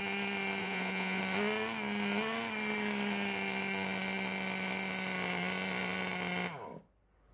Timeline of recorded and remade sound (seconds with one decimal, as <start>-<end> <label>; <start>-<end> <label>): 0.0-0.6 recorded; 0.6-1.2 remade; 1.2-7.3 recorded